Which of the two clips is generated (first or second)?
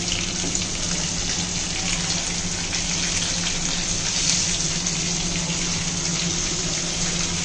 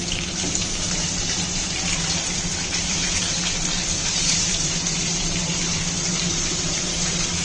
second